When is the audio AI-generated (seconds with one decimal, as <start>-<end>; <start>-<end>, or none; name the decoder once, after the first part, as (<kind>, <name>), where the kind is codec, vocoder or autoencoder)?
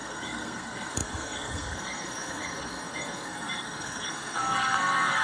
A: 0.0-5.2 (codec, SNAC)